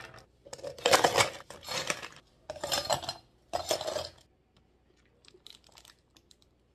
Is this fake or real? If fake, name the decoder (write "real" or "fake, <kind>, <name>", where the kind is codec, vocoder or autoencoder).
real